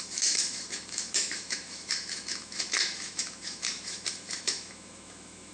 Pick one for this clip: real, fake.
fake